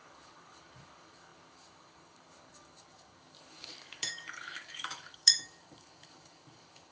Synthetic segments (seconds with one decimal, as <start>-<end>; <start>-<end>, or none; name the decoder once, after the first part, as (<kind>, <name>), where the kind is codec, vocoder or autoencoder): 0.0-6.9 (codec, DAC)

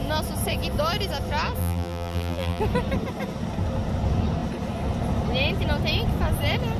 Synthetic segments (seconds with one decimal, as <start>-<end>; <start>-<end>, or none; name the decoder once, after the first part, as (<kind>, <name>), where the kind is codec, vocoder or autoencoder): 1.6-2.6 (vocoder, BigVGAN v2)

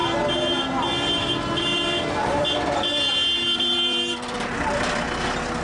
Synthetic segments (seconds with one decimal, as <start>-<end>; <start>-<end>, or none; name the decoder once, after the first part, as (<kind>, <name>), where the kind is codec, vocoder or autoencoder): 1.7-5.0 (vocoder, BigVGAN v2)

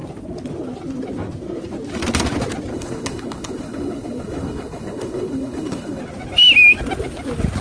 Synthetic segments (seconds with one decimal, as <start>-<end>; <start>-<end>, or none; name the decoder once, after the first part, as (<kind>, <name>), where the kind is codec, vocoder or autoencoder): 2.7-6.0 (codec, HILCodec)

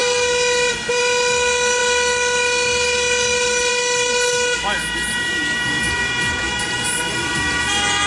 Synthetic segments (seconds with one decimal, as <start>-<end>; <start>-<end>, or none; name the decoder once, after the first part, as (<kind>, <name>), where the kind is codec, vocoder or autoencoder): none

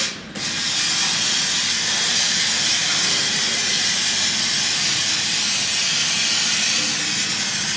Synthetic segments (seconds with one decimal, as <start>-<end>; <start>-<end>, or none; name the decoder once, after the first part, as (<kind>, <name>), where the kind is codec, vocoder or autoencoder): none